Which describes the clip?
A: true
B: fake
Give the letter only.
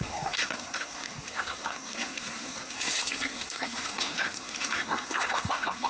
B